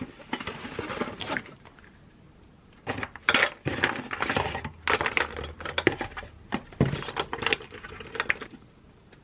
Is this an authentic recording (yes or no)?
yes